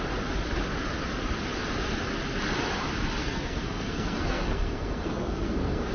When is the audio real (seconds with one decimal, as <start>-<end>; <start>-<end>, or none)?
0.0-3.2